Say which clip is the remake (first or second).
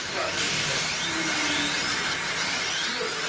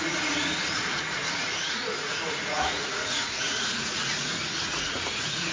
second